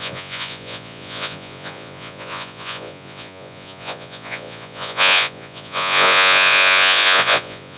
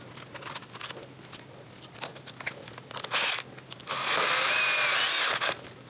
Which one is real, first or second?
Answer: second